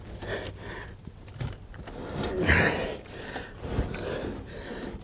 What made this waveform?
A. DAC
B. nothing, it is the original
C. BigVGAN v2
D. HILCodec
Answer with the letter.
B